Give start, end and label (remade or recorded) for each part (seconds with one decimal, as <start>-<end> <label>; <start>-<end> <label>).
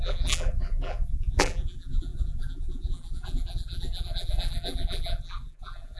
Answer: 0.0-6.0 remade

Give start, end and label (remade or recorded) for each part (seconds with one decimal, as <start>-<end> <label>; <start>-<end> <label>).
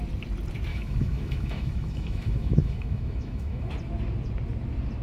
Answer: 0.0-0.7 recorded; 0.7-3.7 remade; 3.7-5.0 recorded